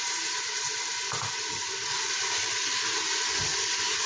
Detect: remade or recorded recorded